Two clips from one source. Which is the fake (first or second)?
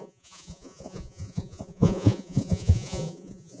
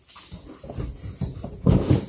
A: first